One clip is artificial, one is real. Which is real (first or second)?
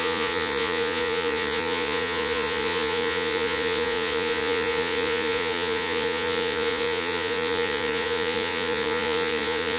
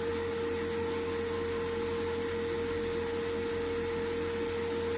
second